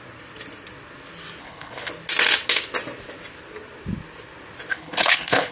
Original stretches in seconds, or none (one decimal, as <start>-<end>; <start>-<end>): 0.0-1.4; 1.9-4.7